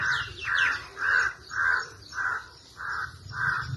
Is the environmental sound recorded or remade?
remade